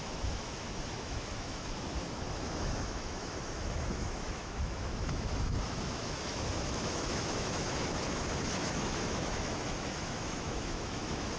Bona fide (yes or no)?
no